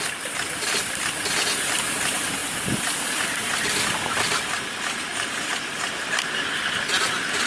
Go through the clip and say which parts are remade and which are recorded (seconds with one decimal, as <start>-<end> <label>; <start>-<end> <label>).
0.0-7.5 recorded

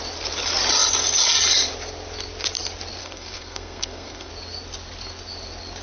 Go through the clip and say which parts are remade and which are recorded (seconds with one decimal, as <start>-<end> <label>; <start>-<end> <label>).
0.0-3.0 recorded; 3.0-4.3 remade; 4.3-5.8 recorded

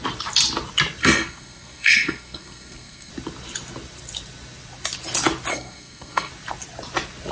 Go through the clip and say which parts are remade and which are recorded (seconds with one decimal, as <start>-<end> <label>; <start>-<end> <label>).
0.0-1.0 recorded; 1.0-3.1 remade; 3.1-5.5 recorded; 5.5-6.3 remade; 6.3-7.3 recorded